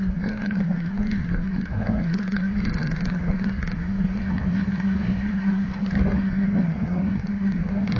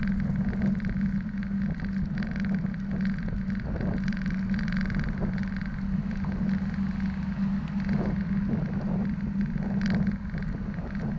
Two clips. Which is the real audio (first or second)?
second